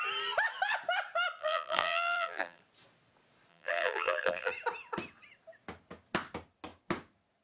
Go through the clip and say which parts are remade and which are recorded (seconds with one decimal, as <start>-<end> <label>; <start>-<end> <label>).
0.0-1.4 recorded; 1.4-2.6 remade; 2.6-3.5 recorded; 3.5-4.5 remade; 4.5-7.4 recorded

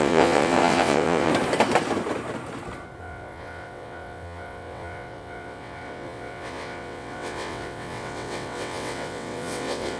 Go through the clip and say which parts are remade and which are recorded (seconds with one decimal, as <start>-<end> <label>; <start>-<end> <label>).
0.0-1.3 remade; 1.3-3.0 recorded; 3.0-10.0 remade